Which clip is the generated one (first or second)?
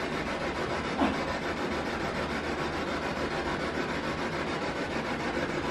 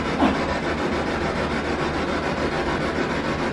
first